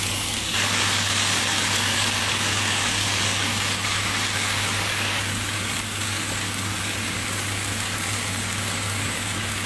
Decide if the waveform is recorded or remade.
remade